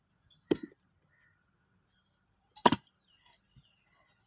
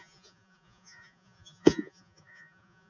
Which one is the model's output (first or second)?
second